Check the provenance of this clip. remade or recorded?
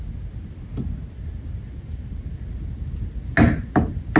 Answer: recorded